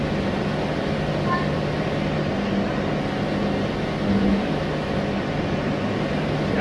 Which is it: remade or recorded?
recorded